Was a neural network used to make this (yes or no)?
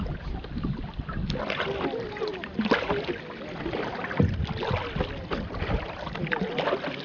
no